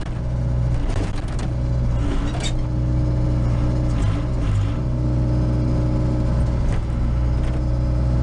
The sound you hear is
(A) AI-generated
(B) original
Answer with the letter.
B